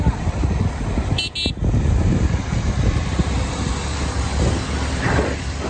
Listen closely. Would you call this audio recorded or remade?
recorded